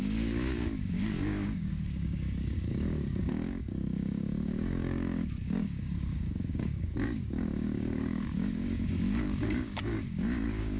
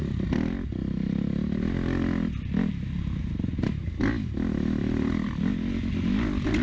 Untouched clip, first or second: second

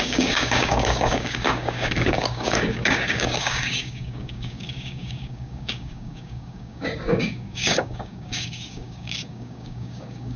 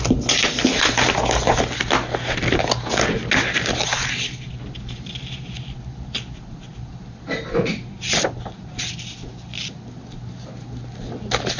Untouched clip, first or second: second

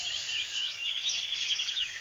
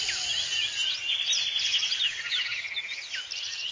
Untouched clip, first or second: second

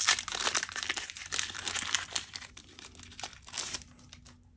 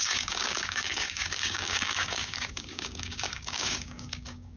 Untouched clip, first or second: first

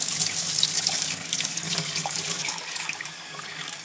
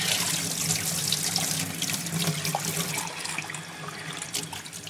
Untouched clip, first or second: second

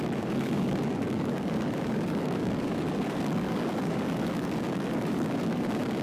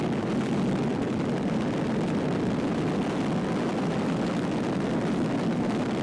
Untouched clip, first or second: second